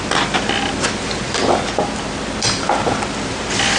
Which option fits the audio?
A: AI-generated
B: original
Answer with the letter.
B